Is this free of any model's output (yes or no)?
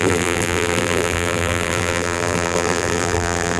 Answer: no